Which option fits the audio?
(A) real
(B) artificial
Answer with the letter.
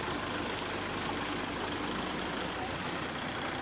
A